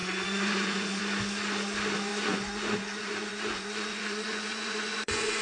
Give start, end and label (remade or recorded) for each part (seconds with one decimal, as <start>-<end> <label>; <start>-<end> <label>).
0.0-1.0 remade; 1.0-2.1 recorded; 2.1-5.4 remade